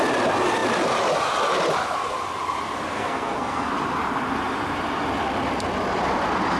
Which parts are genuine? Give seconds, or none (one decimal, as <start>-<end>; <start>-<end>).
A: 0.0-2.9; 3.7-6.6

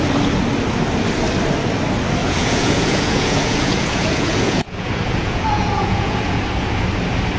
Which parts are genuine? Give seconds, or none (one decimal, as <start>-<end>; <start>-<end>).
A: 0.0-2.2; 6.4-7.4

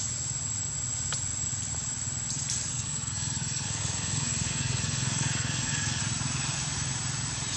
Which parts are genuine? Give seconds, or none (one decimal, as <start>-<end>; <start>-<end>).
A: 0.0-2.7; 6.0-7.6